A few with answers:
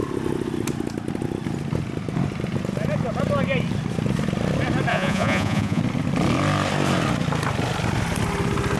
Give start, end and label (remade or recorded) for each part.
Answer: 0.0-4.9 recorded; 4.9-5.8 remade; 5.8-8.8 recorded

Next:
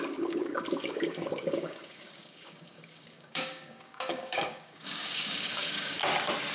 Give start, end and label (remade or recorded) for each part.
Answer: 0.0-6.0 remade; 6.0-6.5 recorded